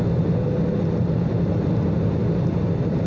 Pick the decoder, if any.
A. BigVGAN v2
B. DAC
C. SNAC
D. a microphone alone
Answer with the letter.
D